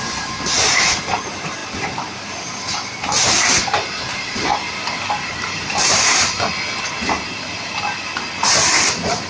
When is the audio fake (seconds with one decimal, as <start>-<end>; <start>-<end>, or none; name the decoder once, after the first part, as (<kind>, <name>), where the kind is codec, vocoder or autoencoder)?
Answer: 0.0-4.5 (vocoder, BigVGAN v2); 5.1-6.5; 8.9-9.3